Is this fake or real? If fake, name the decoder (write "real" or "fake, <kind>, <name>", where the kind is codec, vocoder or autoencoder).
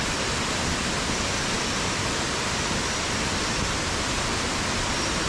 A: real